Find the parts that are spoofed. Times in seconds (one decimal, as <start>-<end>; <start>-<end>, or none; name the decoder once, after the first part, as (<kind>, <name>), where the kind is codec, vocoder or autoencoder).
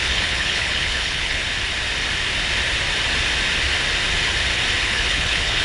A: 0.0-1.4 (codec, HILCodec); 4.8-5.6